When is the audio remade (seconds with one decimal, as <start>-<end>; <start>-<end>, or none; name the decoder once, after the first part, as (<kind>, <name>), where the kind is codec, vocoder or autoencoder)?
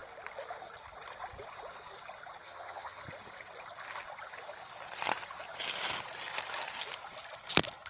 2.4-3.0 (vocoder, HiFi-GAN)